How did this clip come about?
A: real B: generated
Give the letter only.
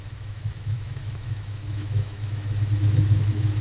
B